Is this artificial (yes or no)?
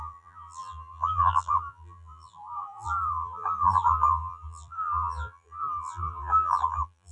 yes